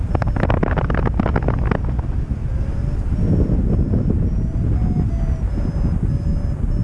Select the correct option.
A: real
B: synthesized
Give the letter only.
A